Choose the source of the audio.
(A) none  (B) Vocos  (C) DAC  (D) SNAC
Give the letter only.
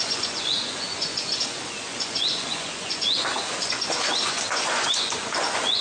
B